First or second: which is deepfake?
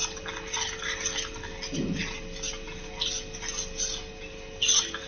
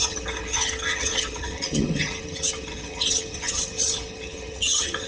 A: second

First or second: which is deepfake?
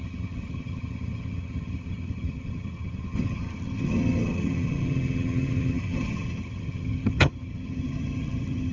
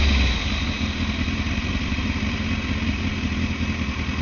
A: first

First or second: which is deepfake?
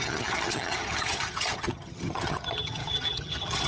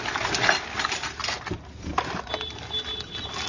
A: first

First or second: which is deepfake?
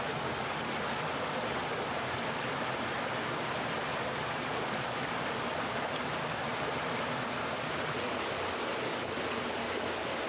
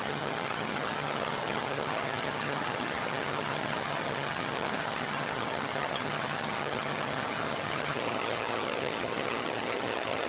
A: second